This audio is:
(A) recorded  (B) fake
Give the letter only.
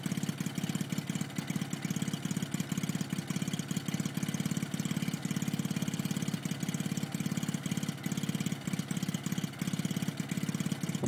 A